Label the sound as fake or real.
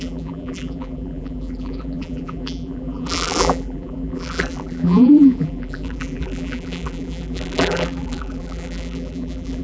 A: fake